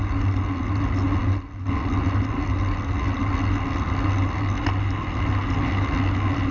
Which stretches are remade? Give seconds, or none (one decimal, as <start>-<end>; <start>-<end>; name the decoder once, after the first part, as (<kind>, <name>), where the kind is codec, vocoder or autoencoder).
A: none